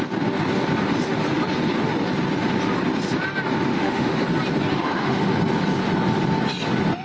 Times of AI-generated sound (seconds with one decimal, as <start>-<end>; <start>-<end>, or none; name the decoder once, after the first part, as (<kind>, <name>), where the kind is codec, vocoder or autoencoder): 3.7-4.2 (autoencoder, DAC-VAE); 4.7-5.3